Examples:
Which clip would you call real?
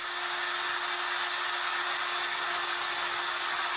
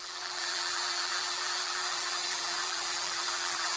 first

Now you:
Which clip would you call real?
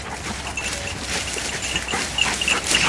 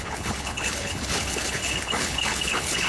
first